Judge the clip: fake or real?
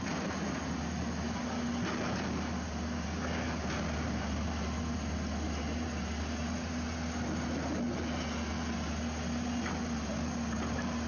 real